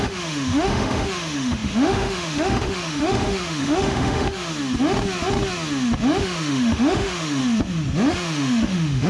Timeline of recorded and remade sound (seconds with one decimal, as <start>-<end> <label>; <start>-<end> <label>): 0.0-4.5 remade; 4.5-6.2 recorded; 6.2-7.4 remade; 7.4-8.1 recorded; 8.1-9.1 remade

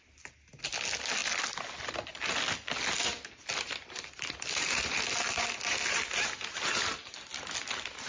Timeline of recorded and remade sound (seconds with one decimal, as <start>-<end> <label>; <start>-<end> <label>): 0.0-8.1 recorded